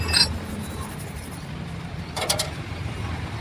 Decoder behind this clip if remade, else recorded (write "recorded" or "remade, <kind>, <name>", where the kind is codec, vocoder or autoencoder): remade, vocoder, BigVGAN v2